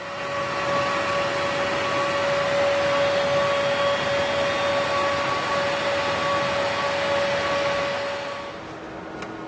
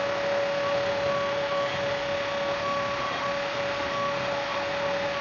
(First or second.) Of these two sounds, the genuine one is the first